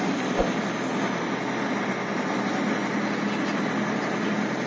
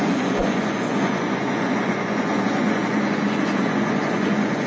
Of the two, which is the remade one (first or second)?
second